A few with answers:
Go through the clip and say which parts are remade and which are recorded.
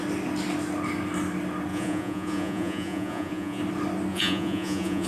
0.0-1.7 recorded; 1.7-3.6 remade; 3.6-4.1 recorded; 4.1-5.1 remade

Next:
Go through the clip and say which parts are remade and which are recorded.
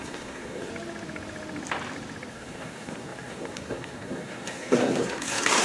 0.0-0.7 remade; 0.7-2.3 recorded; 2.3-5.6 remade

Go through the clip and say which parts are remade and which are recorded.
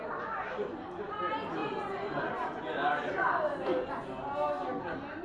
0.0-1.6 recorded; 1.6-3.9 remade; 3.9-5.2 recorded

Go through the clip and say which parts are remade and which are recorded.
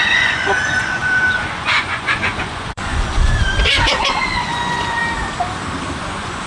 0.0-5.0 remade; 5.0-6.0 recorded; 6.0-6.5 remade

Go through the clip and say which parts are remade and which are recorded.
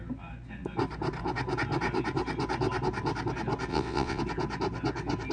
0.0-3.7 recorded; 3.7-4.2 remade; 4.2-5.3 recorded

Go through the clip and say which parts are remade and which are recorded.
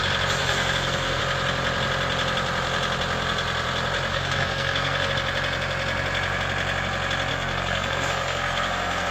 0.0-0.4 recorded; 0.4-1.2 remade; 1.2-4.1 recorded; 4.1-5.1 remade; 5.1-7.3 recorded; 7.3-9.1 remade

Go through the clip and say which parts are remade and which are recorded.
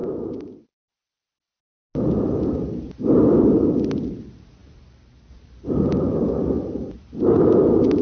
0.0-8.0 recorded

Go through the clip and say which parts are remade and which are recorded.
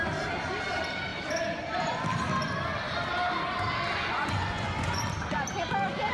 0.0-3.9 recorded; 3.9-5.0 remade; 5.0-6.1 recorded